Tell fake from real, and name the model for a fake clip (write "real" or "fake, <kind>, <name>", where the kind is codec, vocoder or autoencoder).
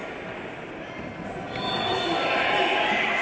real